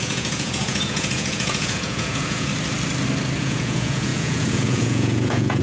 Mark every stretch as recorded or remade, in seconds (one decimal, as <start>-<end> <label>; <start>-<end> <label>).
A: 0.0-2.5 remade; 2.5-3.4 recorded; 3.4-5.6 remade